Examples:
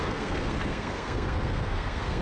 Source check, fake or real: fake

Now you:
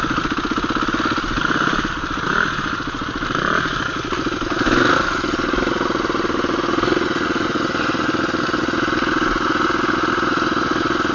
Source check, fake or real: real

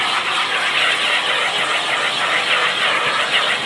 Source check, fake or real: real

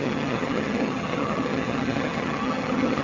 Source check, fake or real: fake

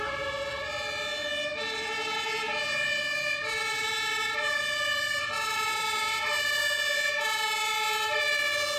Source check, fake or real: real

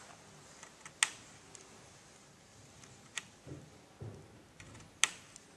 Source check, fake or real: real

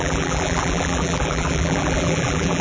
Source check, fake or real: fake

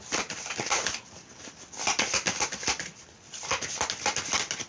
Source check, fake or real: real